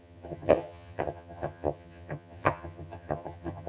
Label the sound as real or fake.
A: fake